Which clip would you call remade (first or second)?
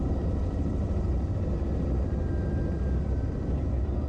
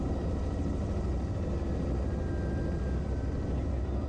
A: first